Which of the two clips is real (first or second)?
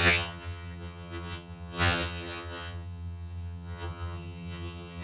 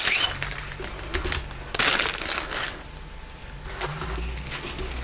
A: second